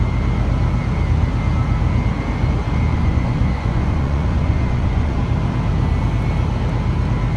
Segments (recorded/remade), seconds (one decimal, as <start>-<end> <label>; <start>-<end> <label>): 0.0-2.9 recorded; 2.9-5.2 remade; 5.2-7.4 recorded